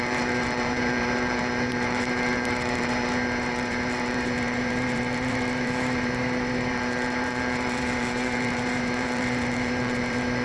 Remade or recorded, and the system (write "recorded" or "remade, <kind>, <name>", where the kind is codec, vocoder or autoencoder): remade, vocoder, BigVGAN v2